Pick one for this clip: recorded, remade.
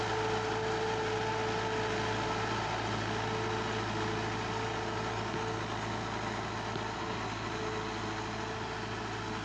recorded